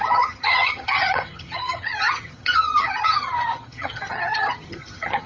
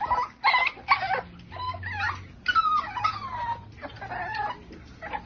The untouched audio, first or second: second